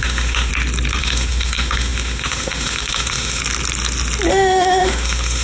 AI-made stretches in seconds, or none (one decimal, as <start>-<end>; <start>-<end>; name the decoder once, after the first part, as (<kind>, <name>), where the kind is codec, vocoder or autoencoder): 0.0-0.5 (autoencoder, DAC-VAE); 1.0-3.4; 4.3-5.4